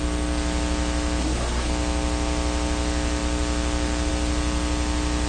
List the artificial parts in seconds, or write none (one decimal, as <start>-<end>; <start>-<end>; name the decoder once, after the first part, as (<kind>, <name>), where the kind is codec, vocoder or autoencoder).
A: 1.2-1.7 (codec, SNAC)